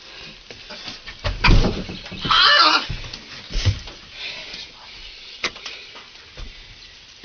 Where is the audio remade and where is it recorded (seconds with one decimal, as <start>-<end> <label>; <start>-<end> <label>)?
0.0-5.0 recorded; 5.0-5.9 remade; 5.9-7.2 recorded